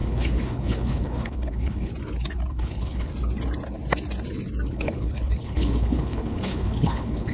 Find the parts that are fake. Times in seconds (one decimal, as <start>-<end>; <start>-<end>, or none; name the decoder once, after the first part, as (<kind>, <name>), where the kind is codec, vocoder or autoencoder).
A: 0.0-1.9 (codec, HILCodec); 2.5-3.1; 4.7-7.3